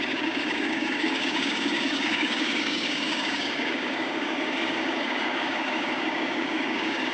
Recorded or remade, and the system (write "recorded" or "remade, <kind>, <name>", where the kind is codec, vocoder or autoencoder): remade, codec, DAC